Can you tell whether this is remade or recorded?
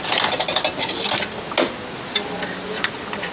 recorded